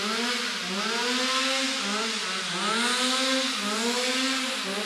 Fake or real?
real